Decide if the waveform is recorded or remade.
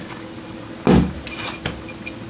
recorded